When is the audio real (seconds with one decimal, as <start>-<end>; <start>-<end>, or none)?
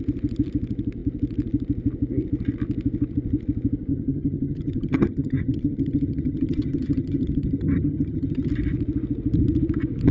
0.0-3.9; 8.5-10.1